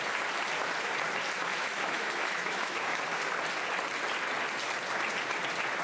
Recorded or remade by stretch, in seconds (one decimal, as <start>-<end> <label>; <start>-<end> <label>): 0.0-1.5 recorded; 1.5-3.0 remade; 3.0-5.8 recorded